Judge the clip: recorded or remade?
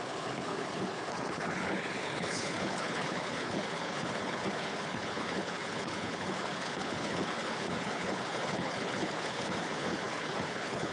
remade